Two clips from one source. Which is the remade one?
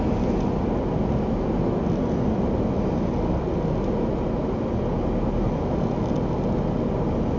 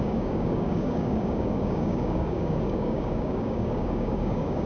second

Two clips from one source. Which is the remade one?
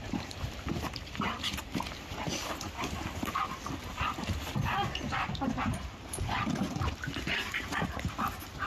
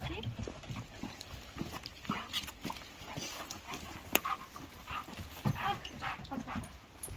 first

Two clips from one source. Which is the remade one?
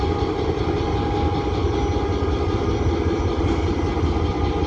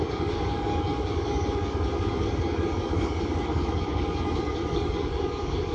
second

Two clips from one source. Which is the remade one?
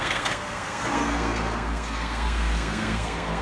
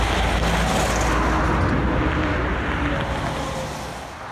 first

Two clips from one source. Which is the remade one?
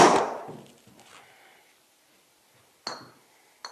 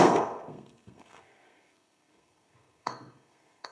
second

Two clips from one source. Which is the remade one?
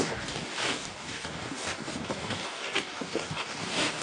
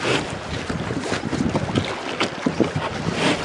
first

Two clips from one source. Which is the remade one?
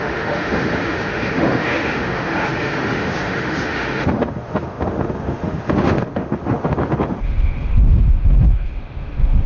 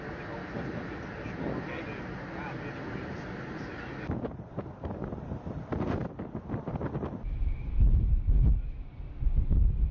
first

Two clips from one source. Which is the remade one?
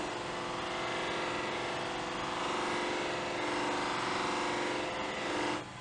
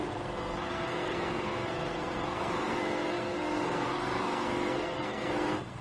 second